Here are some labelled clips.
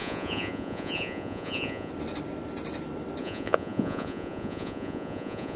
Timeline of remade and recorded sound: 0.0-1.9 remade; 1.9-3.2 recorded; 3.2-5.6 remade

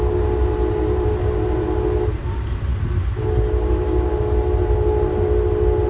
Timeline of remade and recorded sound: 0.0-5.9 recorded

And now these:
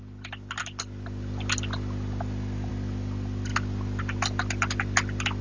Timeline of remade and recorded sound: 0.0-5.4 recorded

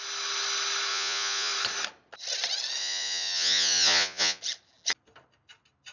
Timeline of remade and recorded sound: 0.0-0.9 recorded; 0.9-1.5 remade; 1.5-2.8 recorded; 2.8-4.4 remade; 4.4-5.9 recorded

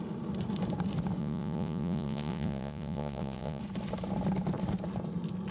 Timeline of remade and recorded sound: 0.0-1.2 recorded; 1.2-3.6 remade; 3.6-5.5 recorded